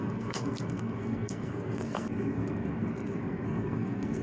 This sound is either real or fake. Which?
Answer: fake